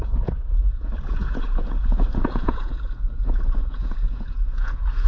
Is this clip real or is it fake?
fake